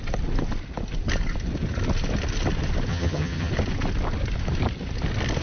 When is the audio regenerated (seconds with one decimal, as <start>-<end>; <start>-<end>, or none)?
2.9-3.5